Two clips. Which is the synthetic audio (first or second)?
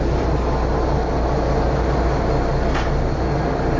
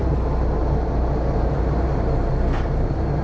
second